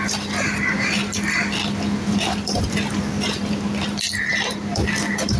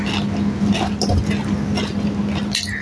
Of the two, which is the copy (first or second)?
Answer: first